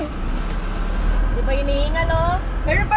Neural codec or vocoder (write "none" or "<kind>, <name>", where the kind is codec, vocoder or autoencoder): none